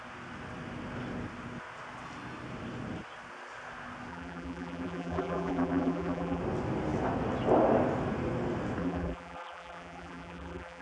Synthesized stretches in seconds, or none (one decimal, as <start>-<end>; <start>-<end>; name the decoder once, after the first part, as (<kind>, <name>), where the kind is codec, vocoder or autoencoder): 4.1-6.4 (vocoder, BigVGAN v2); 8.8-10.8